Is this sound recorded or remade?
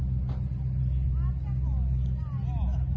recorded